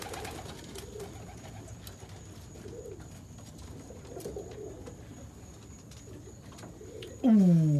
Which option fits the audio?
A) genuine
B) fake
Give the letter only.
A